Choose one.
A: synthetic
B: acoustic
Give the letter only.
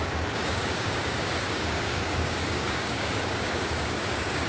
A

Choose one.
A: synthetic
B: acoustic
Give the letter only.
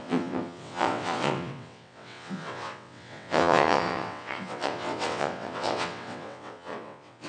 A